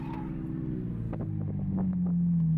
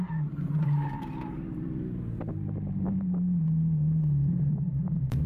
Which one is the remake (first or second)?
second